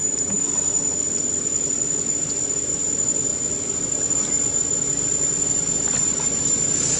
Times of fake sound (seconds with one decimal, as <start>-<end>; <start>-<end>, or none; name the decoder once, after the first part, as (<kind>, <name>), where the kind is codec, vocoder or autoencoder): none